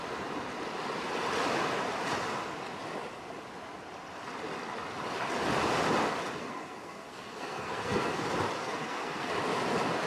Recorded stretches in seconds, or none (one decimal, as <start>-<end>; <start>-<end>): 0.0-6.4; 8.1-8.6; 9.3-10.1